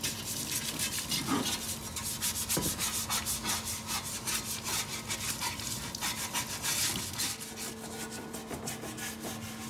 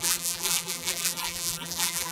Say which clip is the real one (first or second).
first